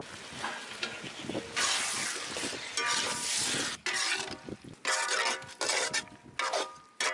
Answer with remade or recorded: recorded